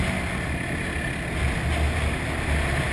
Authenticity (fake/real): real